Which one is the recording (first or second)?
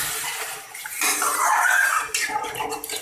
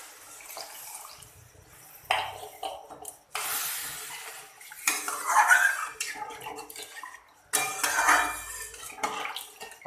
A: second